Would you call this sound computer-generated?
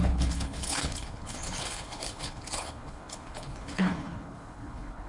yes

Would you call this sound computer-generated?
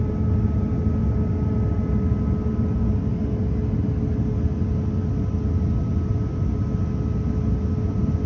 no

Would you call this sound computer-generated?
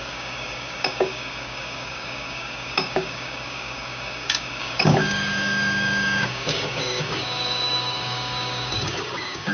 yes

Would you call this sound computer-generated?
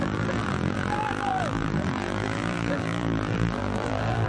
yes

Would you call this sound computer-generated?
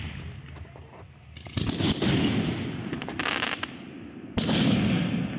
no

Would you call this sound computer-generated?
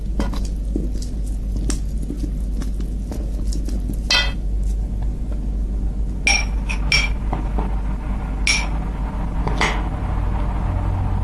no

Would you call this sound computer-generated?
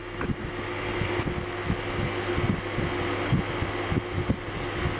no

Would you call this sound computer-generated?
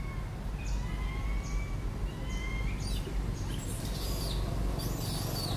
no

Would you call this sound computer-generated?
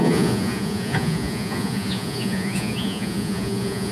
yes